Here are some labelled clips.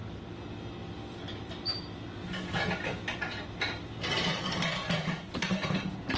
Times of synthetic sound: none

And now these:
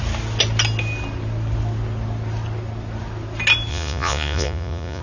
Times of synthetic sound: 3.7-5.0 (vocoder, Vocos)

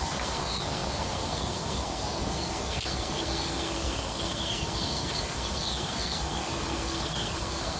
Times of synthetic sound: 0.0-7.8 (codec, SNAC)

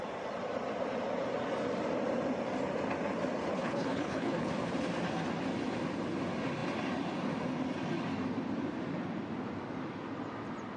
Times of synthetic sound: 3.5-4.5 (codec, HILCodec)

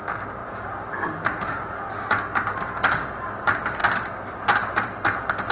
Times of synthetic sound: 0.4-1.9 (vocoder, BigVGAN v2)